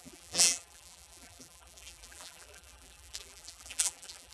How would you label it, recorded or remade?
remade